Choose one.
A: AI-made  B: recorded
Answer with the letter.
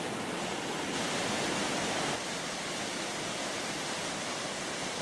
B